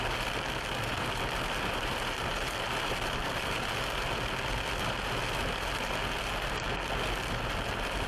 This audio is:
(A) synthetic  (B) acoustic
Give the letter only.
B